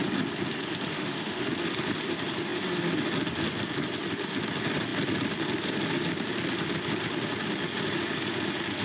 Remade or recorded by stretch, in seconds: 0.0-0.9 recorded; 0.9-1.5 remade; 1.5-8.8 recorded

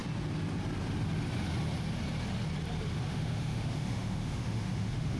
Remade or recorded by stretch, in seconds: 0.0-3.1 recorded; 3.1-5.2 remade

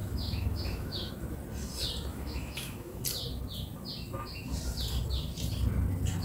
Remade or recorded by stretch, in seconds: 0.0-1.1 remade; 1.1-2.1 recorded; 2.1-3.0 remade; 3.0-6.2 recorded

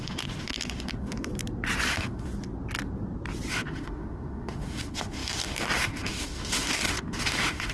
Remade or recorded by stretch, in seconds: 0.0-1.3 remade; 1.3-1.9 recorded; 1.9-2.3 remade; 2.3-3.5 recorded; 3.5-7.7 remade

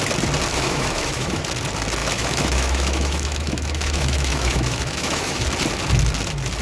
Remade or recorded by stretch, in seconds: 0.0-0.5 recorded; 0.5-1.4 remade; 1.4-2.0 recorded; 2.0-5.4 remade; 5.4-6.6 recorded